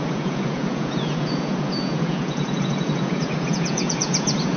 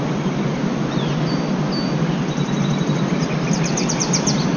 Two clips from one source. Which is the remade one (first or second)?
first